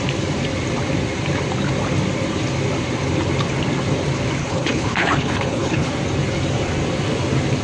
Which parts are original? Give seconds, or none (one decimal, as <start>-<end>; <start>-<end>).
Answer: 0.0-4.4; 5.9-7.6